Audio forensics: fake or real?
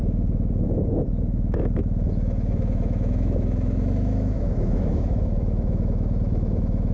fake